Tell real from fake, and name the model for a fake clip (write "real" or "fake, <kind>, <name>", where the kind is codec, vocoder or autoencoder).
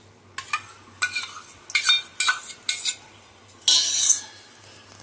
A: real